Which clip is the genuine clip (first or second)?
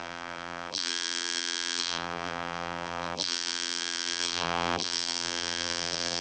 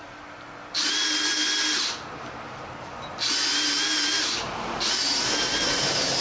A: second